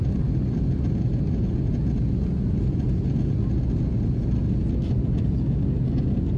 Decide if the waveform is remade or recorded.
recorded